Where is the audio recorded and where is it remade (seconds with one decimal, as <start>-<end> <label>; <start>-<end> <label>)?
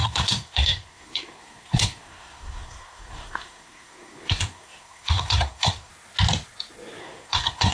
0.0-5.9 remade; 5.9-7.0 recorded; 7.0-7.7 remade